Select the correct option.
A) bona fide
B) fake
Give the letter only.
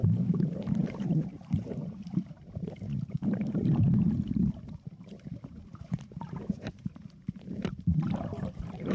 B